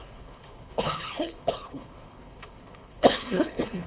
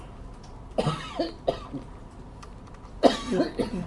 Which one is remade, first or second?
first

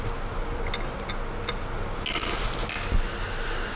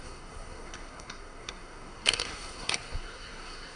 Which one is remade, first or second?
second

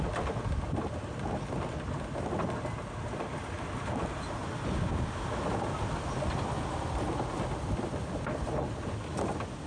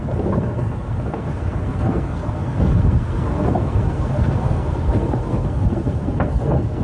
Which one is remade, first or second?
second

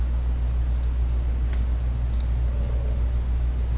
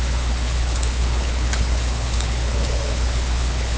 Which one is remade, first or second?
second